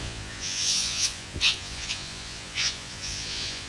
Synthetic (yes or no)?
yes